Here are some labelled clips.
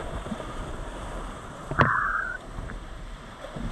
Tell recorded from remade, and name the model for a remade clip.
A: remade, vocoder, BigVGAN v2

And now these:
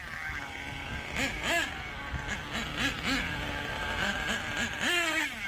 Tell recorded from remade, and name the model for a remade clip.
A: recorded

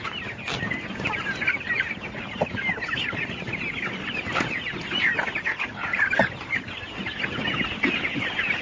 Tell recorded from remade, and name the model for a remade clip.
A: recorded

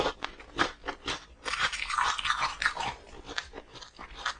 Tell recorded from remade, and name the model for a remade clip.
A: recorded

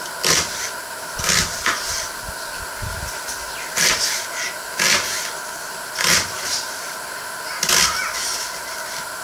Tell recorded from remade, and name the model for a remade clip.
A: recorded